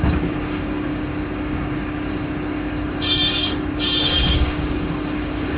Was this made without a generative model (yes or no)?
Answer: no